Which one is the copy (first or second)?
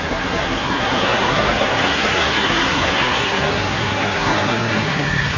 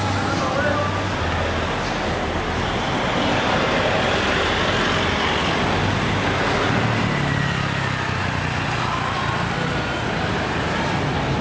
first